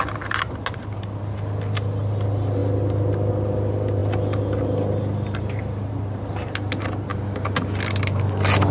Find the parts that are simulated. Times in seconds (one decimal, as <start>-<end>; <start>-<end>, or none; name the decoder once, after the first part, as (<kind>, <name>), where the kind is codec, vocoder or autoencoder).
0.8-2.6 (vocoder, BigVGAN v2); 3.3-8.7